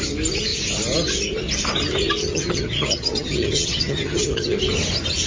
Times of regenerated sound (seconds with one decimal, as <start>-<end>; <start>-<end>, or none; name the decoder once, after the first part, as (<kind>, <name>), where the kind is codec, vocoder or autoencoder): 2.2-4.6 (vocoder, HiFi-GAN)

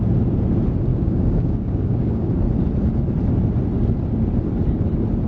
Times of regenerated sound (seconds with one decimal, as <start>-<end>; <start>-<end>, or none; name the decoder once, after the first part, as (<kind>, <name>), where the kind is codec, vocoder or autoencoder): 0.9-2.3 (codec, DAC)